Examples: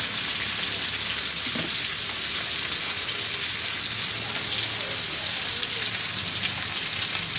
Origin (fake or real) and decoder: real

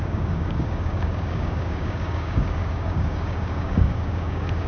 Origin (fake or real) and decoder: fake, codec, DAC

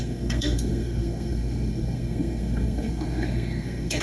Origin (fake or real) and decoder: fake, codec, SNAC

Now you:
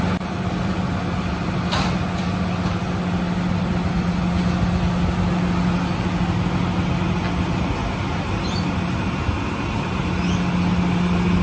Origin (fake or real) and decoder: real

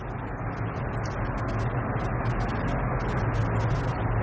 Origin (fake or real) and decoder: real